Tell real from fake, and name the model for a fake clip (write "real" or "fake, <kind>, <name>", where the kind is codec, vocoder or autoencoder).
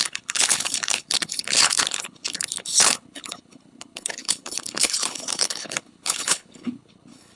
fake, codec, HILCodec